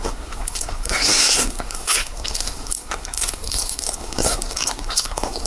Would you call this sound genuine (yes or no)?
no